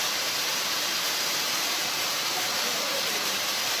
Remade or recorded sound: remade